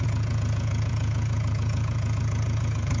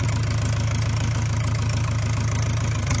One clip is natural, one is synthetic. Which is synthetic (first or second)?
first